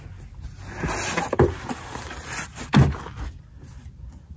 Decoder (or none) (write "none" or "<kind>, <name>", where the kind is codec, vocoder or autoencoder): none